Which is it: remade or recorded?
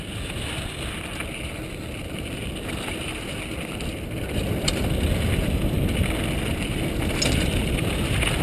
recorded